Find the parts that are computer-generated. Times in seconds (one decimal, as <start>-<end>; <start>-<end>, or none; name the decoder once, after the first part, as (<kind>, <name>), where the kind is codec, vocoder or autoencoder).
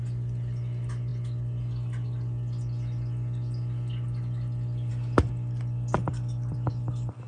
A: none